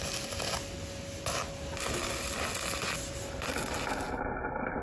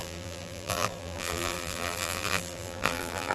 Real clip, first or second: first